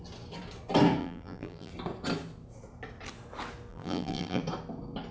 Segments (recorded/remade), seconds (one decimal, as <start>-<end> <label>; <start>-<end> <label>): 0.0-1.0 recorded; 1.0-1.7 remade; 1.7-3.7 recorded; 3.7-4.4 remade; 4.4-5.1 recorded